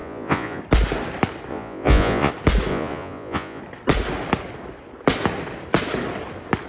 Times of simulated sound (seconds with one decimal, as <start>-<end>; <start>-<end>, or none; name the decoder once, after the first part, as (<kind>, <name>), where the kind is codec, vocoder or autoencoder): 0.0-0.6 (vocoder, Vocos); 1.5-2.3; 2.7-3.6